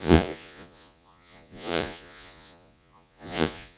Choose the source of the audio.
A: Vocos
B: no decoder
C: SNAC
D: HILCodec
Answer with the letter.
A